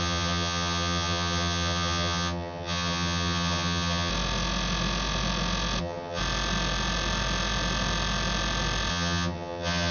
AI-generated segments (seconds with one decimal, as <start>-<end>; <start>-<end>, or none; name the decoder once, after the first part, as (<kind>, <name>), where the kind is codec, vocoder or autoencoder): 0.0-4.1 (vocoder, HiFi-GAN); 5.8-6.2; 8.9-9.9